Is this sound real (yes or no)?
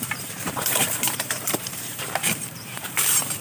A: no